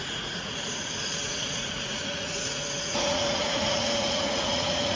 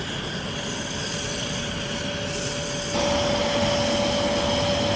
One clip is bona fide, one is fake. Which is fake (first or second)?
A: first